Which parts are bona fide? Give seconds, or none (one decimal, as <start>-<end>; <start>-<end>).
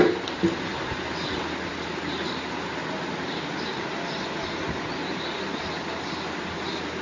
0.0-7.0